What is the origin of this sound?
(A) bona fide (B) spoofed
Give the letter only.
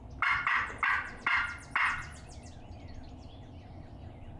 A